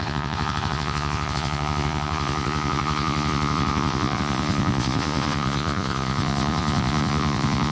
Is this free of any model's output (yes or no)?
no